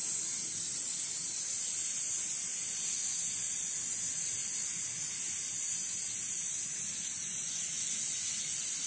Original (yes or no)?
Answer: yes